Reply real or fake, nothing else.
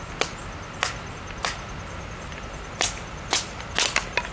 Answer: real